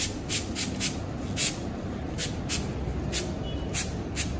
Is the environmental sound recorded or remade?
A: recorded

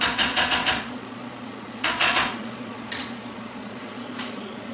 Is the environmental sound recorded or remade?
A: remade